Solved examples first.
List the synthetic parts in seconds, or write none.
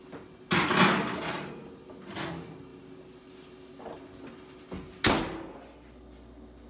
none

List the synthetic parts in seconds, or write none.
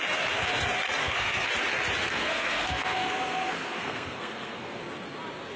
1.0-1.5 (codec, SNAC); 2.1-4.8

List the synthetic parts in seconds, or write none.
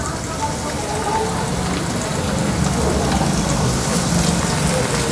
3.6-4.1 (codec, SNAC)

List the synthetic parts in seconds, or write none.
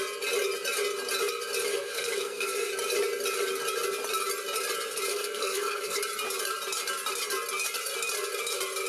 1.7-2.7 (codec, SNAC); 5.1-6.0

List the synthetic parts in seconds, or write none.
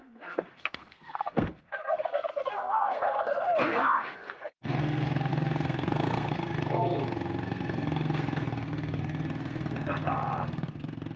0.0-11.2 (codec, SNAC)